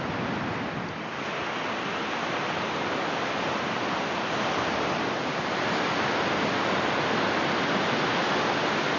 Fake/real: real